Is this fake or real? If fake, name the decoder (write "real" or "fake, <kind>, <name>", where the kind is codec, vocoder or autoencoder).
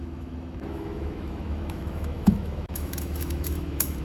fake, autoencoder, DAC-VAE